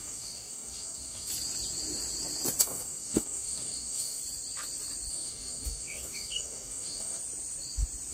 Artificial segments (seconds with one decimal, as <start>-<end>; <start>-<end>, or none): 0.0-1.3; 2.6-4.2; 5.1-7.2